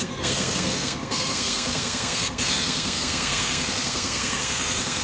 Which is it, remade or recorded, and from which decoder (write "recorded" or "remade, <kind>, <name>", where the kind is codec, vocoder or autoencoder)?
remade, codec, SNAC